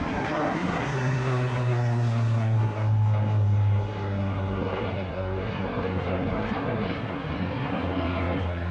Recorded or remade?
remade